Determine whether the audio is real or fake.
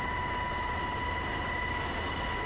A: real